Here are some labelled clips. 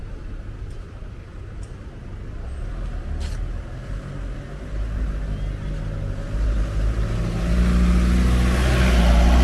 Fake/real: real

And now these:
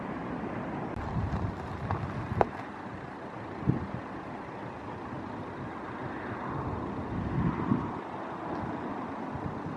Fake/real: real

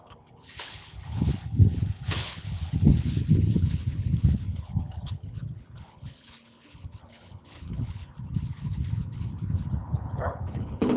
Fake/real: fake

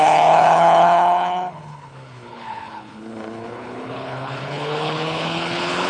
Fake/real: fake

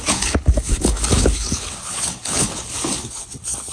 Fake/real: fake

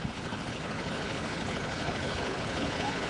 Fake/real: fake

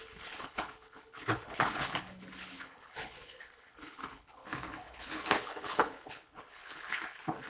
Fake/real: fake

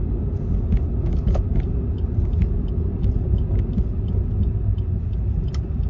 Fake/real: real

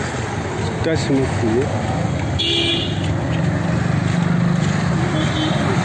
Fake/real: real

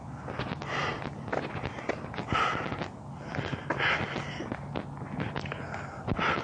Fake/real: real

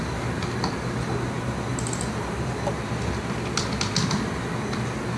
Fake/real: real